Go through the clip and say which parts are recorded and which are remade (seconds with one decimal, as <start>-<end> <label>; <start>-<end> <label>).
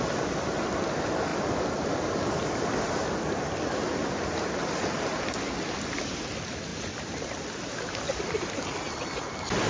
0.0-9.7 recorded